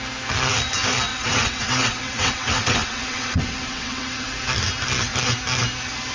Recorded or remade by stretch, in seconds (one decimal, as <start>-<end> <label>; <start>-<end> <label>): 0.0-1.1 recorded; 1.1-4.3 remade; 4.3-6.1 recorded